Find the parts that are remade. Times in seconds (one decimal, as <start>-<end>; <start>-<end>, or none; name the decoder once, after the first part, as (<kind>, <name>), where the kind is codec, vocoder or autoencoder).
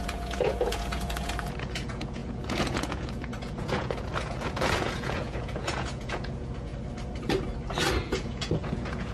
0.0-6.7 (vocoder, Vocos); 7.9-9.1